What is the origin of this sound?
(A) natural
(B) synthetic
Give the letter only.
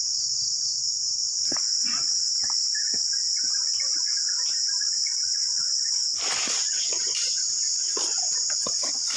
A